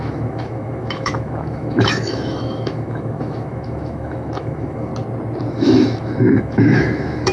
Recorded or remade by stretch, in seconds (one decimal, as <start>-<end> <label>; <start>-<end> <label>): 0.0-4.9 remade; 4.9-5.5 recorded; 5.5-7.3 remade